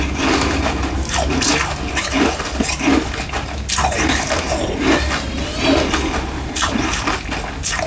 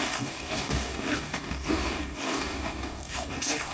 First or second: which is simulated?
second